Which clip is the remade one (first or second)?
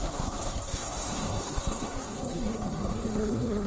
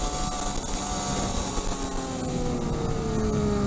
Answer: first